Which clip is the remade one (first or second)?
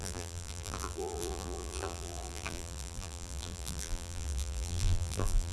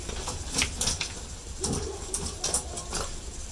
first